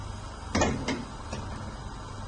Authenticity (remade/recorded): recorded